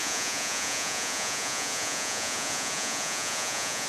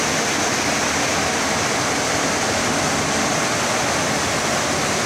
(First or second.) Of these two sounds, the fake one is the first